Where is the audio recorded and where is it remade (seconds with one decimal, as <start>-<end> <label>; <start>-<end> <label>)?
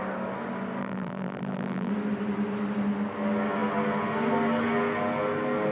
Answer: 0.0-0.8 recorded; 0.8-1.9 remade; 1.9-5.7 recorded